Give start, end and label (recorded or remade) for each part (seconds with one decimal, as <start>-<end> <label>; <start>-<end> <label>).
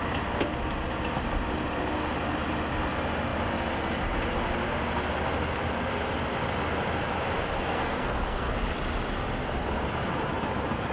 0.0-7.6 recorded; 7.6-8.5 remade; 8.5-10.9 recorded